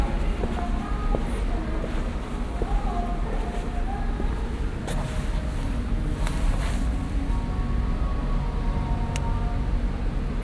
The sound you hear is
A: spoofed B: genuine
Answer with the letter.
B